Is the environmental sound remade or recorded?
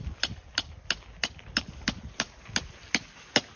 recorded